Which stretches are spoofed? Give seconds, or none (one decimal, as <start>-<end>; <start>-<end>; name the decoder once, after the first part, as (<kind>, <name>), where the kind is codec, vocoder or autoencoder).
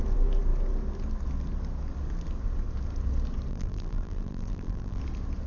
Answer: 3.5-5.0 (vocoder, BigVGAN v2)